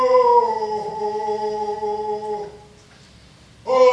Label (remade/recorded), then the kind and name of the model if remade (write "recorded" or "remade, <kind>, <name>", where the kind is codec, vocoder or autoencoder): recorded